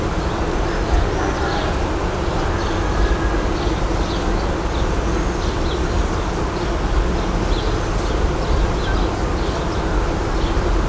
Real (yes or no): yes